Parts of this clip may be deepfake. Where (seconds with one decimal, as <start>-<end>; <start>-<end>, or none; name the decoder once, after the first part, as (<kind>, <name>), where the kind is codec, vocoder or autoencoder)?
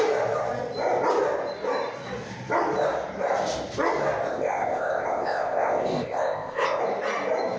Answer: 4.3-6.8 (codec, ZipCodec)